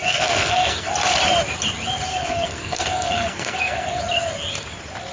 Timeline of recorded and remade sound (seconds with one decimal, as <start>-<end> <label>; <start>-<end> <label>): 0.0-0.9 remade; 0.9-2.1 recorded; 2.1-4.0 remade; 4.0-5.1 recorded

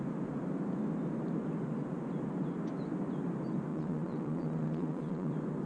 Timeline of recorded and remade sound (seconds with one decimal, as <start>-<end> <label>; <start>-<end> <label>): 0.0-3.7 recorded; 3.7-5.3 remade; 5.3-5.7 recorded

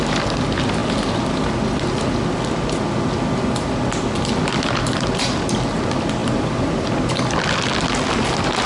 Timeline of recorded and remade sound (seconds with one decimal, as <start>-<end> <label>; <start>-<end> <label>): 0.0-6.2 recorded; 6.2-6.9 remade; 6.9-8.7 recorded

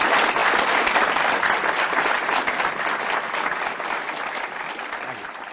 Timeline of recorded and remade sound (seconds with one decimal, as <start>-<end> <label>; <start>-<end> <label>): 0.0-5.5 recorded

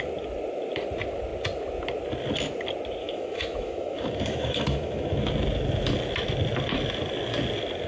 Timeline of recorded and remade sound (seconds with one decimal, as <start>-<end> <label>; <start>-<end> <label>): 0.0-3.0 recorded; 3.0-5.2 remade; 5.2-7.9 recorded

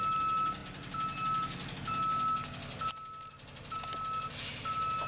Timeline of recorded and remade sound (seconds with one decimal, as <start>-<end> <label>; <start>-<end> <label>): 0.0-5.1 recorded

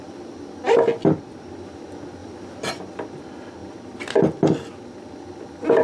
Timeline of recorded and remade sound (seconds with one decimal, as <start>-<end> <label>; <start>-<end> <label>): 0.0-5.8 recorded